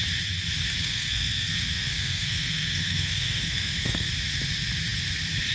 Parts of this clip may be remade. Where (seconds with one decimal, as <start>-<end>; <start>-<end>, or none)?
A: 0.8-4.1